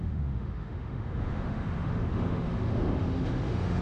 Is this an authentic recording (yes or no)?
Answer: no